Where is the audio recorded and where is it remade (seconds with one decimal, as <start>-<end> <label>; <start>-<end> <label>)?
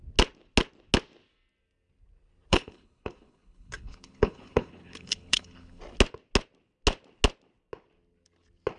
0.0-2.5 recorded; 2.5-5.8 remade; 5.8-8.8 recorded